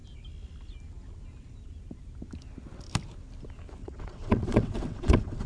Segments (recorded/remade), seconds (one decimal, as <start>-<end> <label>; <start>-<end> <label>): 0.0-3.8 recorded; 3.8-5.5 remade